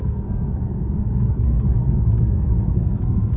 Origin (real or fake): fake